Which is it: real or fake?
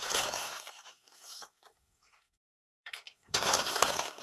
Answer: fake